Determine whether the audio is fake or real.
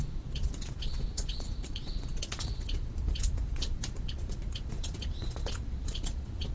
fake